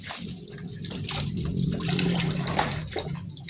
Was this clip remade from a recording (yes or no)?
no